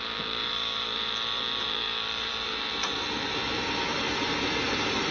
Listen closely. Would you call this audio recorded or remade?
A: remade